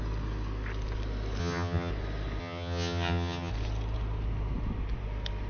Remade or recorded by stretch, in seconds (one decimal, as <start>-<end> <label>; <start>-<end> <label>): 0.0-1.4 recorded; 1.4-1.9 remade; 1.9-2.4 recorded; 2.4-3.5 remade; 3.5-5.5 recorded